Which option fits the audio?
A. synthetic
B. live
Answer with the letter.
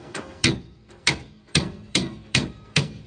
A